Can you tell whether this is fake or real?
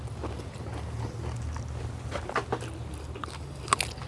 real